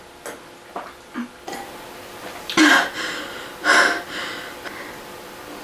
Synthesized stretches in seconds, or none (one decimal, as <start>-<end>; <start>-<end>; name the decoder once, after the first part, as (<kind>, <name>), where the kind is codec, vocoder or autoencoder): none